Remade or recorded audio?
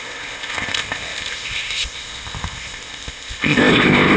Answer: remade